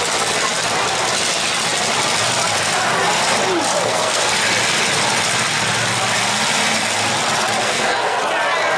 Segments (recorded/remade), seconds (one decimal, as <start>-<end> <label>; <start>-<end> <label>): 0.0-3.7 recorded; 3.7-4.2 remade; 4.2-7.6 recorded; 7.6-8.2 remade; 8.2-8.8 recorded